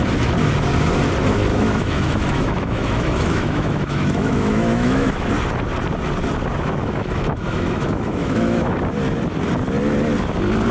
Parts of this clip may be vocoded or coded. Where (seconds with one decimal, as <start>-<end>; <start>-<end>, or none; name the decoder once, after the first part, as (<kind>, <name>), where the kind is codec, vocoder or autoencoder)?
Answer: 1.5-5.3 (autoencoder, DAC-VAE); 6.8-8.8